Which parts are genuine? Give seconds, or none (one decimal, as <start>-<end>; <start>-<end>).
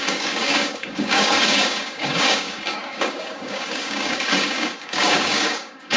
none